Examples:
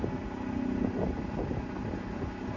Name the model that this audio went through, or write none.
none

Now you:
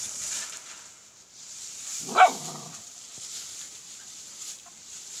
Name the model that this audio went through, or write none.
vocoder, BigVGAN v2